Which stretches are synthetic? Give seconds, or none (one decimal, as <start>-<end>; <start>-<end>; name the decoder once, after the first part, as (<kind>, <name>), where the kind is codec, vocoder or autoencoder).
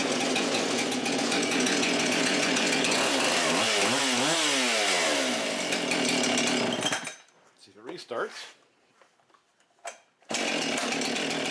0.0-3.1 (vocoder, Vocos)